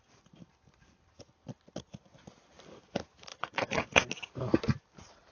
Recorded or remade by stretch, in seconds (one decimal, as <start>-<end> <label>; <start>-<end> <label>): 0.0-3.3 recorded; 3.3-4.0 remade; 4.0-5.3 recorded